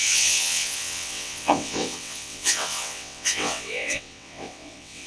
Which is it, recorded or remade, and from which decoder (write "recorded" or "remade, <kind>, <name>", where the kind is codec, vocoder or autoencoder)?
remade, vocoder, WaveNeXt